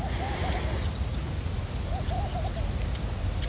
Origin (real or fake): real